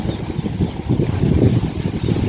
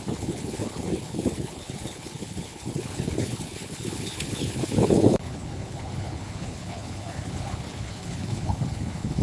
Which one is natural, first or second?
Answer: first